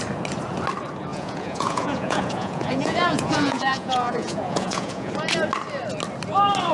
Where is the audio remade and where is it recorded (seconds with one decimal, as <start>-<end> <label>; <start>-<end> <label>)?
0.0-1.1 recorded; 1.1-5.1 remade; 5.1-6.7 recorded